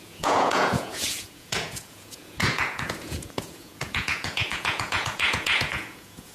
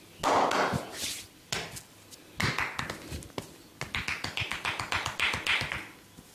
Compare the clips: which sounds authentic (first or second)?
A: second